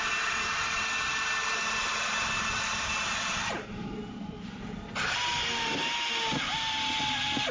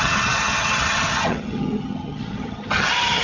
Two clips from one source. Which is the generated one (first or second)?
second